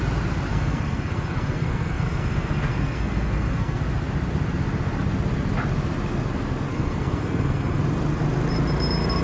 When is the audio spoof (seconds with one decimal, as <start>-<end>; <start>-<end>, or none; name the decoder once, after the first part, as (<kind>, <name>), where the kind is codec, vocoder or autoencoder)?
0.5-3.8 (codec, SNAC); 6.7-7.8